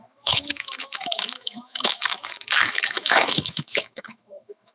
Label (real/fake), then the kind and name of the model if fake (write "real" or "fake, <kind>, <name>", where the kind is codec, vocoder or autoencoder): fake, autoencoder, DAC-VAE